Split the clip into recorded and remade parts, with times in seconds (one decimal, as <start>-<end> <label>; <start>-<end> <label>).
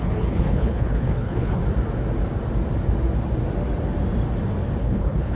0.0-1.6 remade; 1.6-4.8 recorded; 4.8-5.4 remade